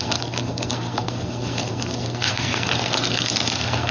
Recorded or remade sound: remade